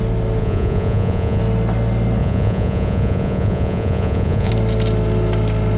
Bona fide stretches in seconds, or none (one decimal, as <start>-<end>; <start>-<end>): 0.0-0.4; 1.4-2.2; 4.5-5.8